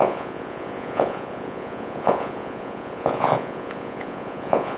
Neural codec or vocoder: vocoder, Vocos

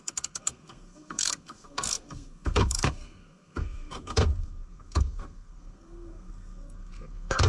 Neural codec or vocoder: codec, SNAC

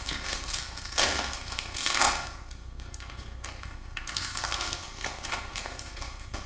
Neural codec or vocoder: codec, SNAC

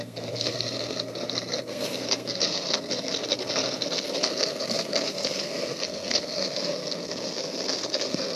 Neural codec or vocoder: codec, SNAC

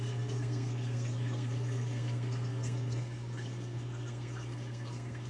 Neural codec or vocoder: codec, SNAC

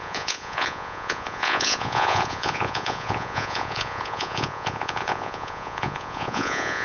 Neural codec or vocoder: vocoder, Vocos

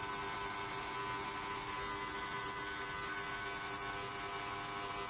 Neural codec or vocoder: none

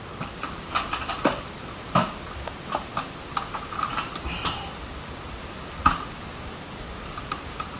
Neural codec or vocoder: none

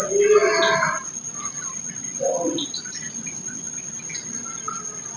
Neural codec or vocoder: none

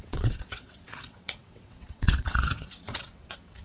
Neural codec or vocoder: vocoder, WaveNeXt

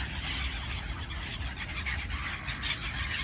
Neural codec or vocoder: none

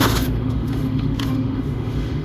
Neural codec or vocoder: autoencoder, DAC-VAE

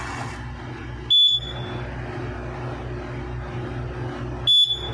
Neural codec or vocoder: none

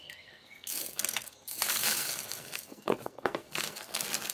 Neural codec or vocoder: codec, SNAC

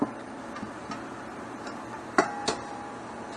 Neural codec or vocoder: none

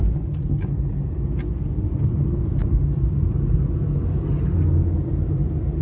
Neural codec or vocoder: none